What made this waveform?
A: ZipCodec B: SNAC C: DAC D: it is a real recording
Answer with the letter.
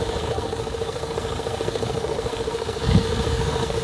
B